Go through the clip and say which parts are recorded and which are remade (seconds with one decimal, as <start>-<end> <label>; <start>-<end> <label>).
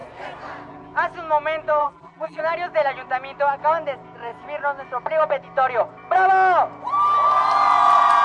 0.0-1.8 recorded; 1.8-2.4 remade; 2.4-8.2 recorded